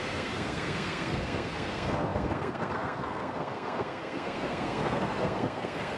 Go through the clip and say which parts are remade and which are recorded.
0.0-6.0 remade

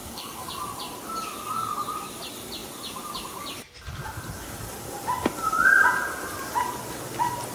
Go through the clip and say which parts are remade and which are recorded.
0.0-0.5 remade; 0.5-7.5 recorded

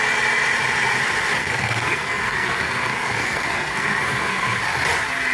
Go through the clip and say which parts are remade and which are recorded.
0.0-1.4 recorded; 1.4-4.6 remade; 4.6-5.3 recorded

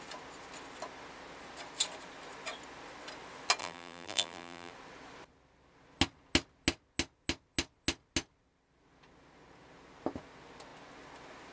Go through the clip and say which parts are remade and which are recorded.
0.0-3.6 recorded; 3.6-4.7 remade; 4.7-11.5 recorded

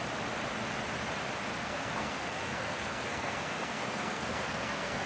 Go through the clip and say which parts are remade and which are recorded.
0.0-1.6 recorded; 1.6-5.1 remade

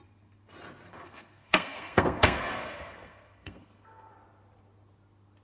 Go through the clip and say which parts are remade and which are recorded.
0.0-0.9 recorded; 0.9-4.1 remade; 4.1-5.4 recorded